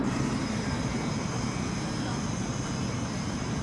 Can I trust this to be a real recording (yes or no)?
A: no